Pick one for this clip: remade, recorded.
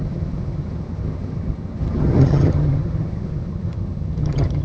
remade